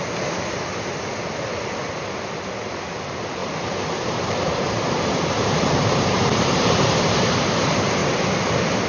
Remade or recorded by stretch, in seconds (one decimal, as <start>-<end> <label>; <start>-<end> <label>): 0.0-3.4 recorded; 3.4-7.4 remade; 7.4-8.9 recorded